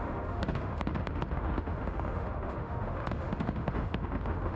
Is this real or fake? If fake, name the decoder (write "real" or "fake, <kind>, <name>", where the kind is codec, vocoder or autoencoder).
fake, autoencoder, DAC-VAE